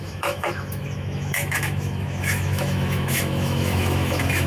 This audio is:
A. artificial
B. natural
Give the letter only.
A